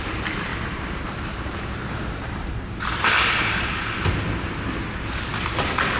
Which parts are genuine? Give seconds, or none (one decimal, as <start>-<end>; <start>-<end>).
0.0-0.5; 4.1-6.0